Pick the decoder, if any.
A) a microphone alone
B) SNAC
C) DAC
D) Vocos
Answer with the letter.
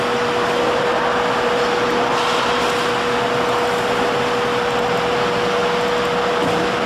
A